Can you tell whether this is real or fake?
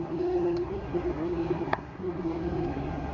fake